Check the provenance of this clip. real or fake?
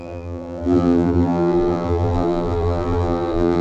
fake